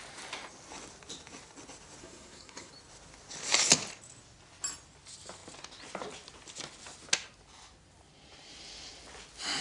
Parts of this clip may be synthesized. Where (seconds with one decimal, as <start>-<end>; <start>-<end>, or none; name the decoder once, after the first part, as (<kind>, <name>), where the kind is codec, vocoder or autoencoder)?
2.0-2.7 (codec, SNAC)